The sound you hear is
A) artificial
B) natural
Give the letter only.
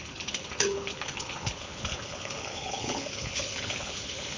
A